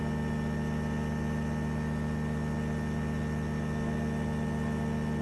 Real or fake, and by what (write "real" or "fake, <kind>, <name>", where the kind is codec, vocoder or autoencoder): real